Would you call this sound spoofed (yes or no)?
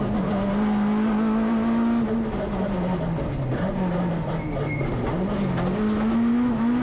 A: no